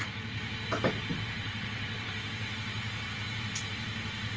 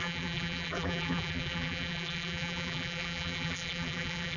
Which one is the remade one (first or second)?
second